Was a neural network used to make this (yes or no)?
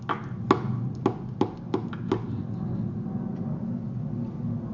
no